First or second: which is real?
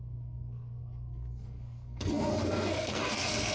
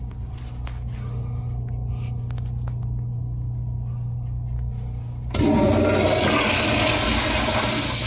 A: second